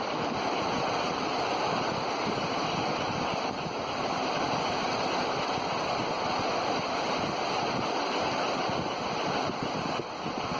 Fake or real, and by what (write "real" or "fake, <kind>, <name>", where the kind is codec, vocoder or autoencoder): real